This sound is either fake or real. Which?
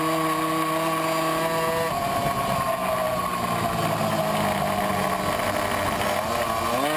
real